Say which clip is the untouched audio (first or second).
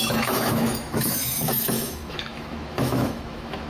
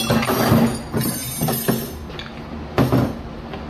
second